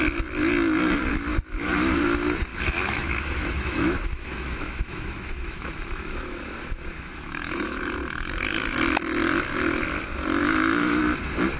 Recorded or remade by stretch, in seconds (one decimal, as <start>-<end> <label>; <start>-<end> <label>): 0.0-1.3 recorded; 1.3-2.0 remade; 2.0-2.5 recorded; 2.5-7.8 remade; 7.8-10.4 recorded; 10.4-11.0 remade; 11.0-11.6 recorded